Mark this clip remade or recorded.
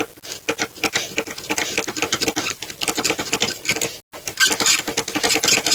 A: recorded